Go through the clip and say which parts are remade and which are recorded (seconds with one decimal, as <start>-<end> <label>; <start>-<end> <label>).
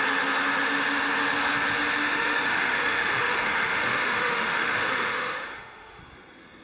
0.0-2.0 recorded; 2.0-6.0 remade; 6.0-6.6 recorded